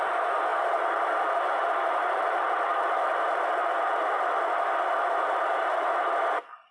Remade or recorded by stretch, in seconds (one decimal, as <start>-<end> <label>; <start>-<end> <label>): 0.0-0.5 remade; 0.5-2.1 recorded; 2.1-6.7 remade